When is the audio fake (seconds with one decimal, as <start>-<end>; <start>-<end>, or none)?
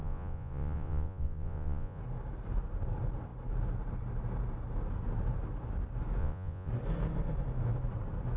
0.0-2.0; 6.2-6.7